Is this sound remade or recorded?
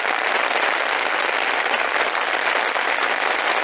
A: recorded